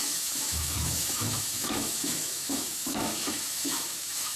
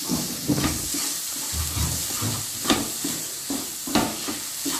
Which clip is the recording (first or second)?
second